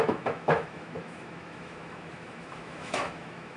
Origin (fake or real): fake